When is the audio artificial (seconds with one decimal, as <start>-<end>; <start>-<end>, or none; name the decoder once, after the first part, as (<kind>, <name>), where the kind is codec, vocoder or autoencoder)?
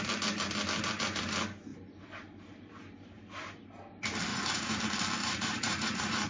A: 4.3-4.8 (vocoder, Vocos); 5.2-6.3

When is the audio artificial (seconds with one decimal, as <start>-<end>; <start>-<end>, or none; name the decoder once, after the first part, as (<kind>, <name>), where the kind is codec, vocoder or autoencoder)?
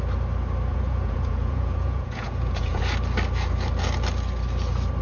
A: 0.7-2.8 (vocoder, Vocos)